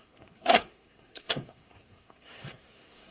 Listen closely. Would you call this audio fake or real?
fake